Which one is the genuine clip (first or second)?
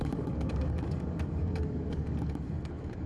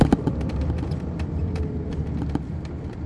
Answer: second